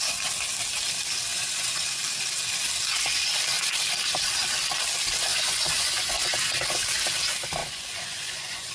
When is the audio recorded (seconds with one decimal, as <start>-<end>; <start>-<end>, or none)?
0.0-1.3; 2.0-5.3; 6.3-7.6